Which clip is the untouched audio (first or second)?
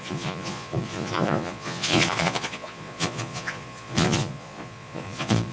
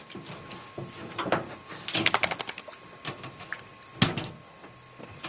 second